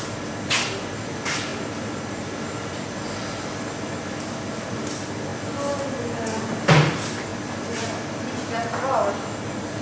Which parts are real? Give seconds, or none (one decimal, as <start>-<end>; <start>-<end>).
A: 0.0-9.8